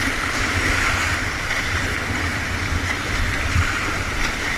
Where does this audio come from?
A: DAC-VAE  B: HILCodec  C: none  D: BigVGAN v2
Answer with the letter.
D